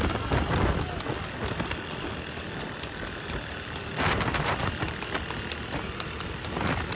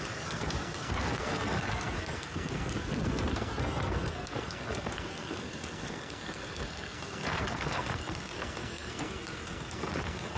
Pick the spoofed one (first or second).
second